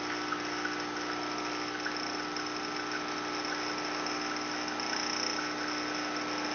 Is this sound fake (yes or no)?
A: no